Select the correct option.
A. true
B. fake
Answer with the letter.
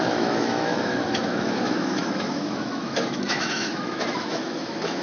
B